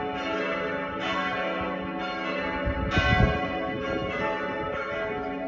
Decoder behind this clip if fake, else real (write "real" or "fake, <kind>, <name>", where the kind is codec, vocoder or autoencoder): real